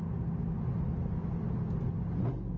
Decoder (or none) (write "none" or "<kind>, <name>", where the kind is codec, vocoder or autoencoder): none